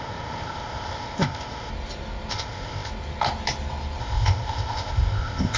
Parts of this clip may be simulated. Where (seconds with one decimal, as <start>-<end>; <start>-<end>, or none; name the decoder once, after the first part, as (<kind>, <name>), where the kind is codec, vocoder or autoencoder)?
0.0-1.7 (codec, ZipCodec); 2.3-2.9; 4.0-5.6